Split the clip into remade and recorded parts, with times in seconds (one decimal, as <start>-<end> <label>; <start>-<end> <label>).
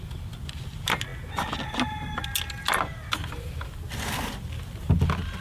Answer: 0.0-5.4 recorded